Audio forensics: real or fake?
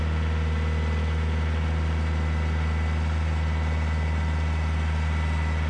real